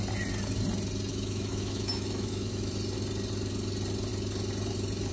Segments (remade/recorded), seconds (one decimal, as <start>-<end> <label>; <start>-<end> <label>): 0.0-1.1 recorded; 1.1-2.7 remade; 2.7-5.1 recorded